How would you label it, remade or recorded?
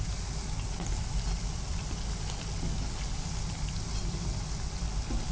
recorded